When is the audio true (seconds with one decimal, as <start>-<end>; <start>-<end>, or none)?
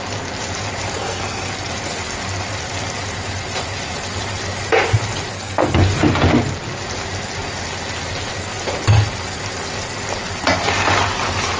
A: 0.0-1.0; 1.5-5.3; 5.8-11.6